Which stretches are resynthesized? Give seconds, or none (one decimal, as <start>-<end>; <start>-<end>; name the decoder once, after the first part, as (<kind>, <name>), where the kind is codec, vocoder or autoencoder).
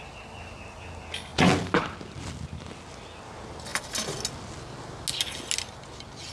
none